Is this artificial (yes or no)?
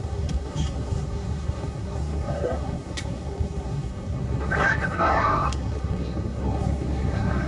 yes